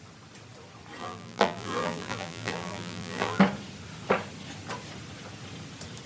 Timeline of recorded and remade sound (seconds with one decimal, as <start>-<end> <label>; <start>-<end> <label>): 0.0-1.0 recorded; 1.0-3.4 remade; 3.4-6.1 recorded